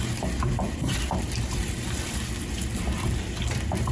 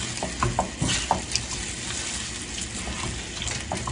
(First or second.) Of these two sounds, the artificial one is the first